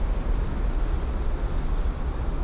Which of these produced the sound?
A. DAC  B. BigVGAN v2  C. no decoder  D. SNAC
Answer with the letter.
C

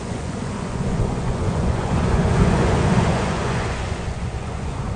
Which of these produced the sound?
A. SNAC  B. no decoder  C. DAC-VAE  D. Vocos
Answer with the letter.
D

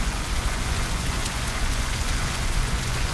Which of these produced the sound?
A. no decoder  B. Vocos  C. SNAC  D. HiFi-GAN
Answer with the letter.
B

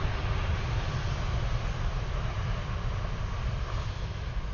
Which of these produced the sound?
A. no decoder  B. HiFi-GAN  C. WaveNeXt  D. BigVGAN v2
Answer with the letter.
A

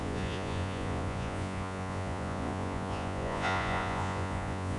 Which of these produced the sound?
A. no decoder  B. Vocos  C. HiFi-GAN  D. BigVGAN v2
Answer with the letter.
B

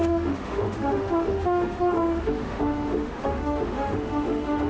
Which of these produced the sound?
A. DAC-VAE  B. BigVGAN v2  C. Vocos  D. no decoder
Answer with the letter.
A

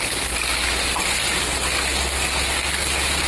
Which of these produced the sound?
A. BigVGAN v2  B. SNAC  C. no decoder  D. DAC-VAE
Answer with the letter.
C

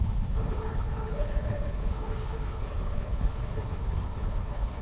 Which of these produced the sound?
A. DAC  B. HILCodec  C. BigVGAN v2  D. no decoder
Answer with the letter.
B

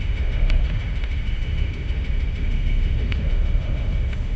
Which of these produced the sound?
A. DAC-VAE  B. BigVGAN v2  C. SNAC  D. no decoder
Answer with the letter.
A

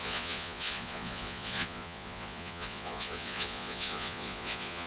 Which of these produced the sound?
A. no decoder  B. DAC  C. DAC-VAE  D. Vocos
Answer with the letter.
D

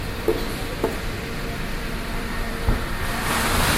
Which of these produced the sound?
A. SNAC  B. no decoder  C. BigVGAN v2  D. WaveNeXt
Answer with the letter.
C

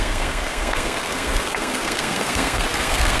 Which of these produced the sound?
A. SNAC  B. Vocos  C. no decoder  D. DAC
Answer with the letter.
A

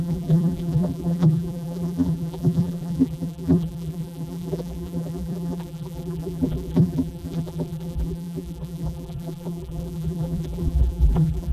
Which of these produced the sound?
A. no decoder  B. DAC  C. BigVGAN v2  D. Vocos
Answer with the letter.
C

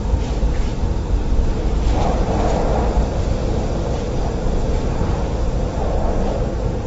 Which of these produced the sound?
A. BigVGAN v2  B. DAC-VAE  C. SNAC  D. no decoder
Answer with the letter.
D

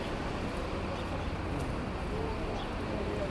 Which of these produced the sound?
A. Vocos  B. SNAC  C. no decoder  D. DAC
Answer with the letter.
C